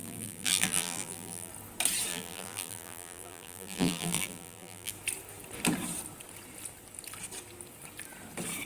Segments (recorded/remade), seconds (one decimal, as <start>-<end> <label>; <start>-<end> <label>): 0.0-1.5 remade; 1.5-2.1 recorded; 2.1-4.9 remade; 4.9-8.7 recorded